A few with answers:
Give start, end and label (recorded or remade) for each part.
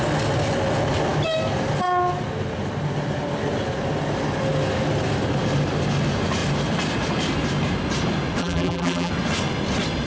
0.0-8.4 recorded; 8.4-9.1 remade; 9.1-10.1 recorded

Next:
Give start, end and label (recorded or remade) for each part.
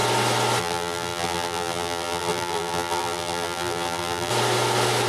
0.0-0.6 recorded; 0.6-4.3 remade; 4.3-5.1 recorded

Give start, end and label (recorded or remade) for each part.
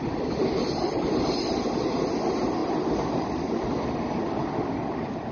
0.0-5.3 recorded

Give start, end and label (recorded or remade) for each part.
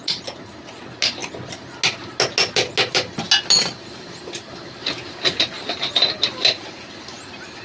0.0-7.6 recorded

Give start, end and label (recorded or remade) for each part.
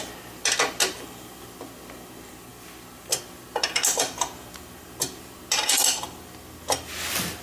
0.0-7.4 recorded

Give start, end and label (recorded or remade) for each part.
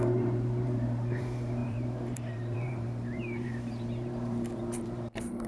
0.0-5.5 remade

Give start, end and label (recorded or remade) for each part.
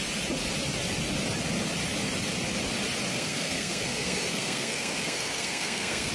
0.0-3.1 recorded; 3.1-6.1 remade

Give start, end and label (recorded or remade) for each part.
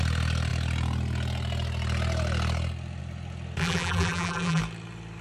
0.0-3.6 recorded; 3.6-4.6 remade; 4.6-5.2 recorded